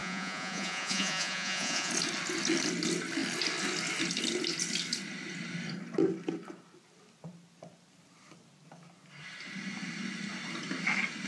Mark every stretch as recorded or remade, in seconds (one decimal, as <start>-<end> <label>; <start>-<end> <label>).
0.0-1.9 remade; 1.9-11.3 recorded